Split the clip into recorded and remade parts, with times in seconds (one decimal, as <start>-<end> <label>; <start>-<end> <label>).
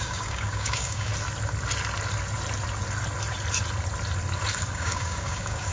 0.0-1.1 remade; 1.1-4.5 recorded; 4.5-5.7 remade